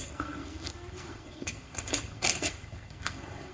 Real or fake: fake